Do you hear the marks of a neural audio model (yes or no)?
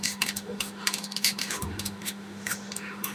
yes